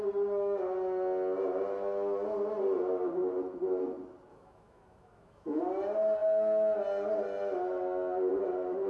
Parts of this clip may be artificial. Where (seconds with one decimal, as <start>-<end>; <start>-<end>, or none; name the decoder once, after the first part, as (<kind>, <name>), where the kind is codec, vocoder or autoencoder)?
4.3-5.6 (autoencoder, DAC-VAE)